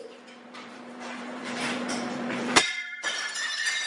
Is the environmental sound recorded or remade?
remade